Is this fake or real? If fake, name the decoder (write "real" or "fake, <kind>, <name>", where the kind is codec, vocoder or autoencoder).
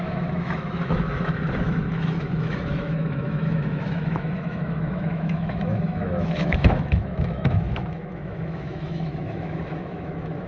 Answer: fake, autoencoder, DAC-VAE